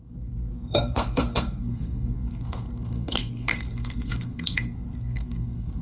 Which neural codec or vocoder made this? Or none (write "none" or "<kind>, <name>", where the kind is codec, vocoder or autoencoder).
codec, SNAC